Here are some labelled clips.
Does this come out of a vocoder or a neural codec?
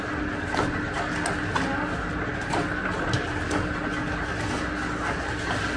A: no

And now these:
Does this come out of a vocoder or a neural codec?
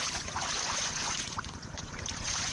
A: yes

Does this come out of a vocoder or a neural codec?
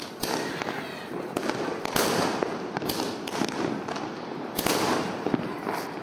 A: no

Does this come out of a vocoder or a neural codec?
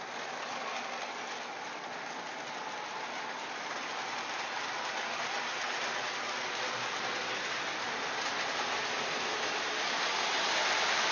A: no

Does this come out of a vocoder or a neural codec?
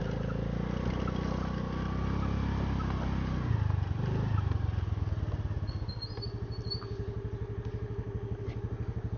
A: no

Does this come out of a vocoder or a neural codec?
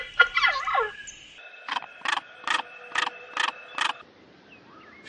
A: no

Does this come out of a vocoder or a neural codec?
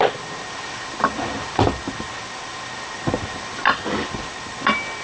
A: no